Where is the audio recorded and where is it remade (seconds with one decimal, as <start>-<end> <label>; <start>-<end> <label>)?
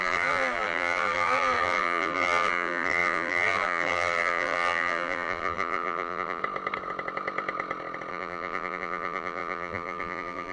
0.0-6.4 remade; 6.4-8.1 recorded; 8.1-10.5 remade